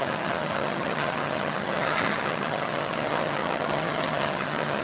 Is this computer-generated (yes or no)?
yes